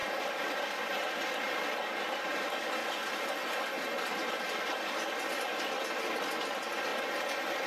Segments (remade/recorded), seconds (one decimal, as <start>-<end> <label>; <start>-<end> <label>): 0.0-7.7 recorded